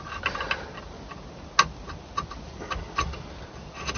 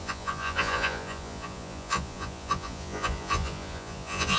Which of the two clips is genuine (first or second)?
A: first